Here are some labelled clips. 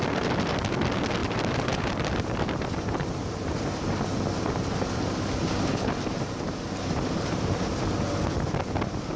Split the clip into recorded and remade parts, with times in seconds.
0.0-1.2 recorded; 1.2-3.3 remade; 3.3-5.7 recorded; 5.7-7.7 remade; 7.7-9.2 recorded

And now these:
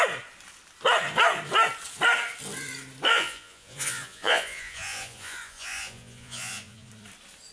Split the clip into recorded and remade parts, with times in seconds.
0.0-3.1 recorded; 3.1-6.9 remade; 6.9-7.5 recorded

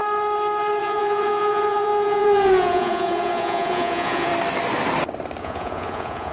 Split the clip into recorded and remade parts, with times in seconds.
0.0-0.8 recorded; 0.8-4.3 remade; 4.3-5.4 recorded; 5.4-6.3 remade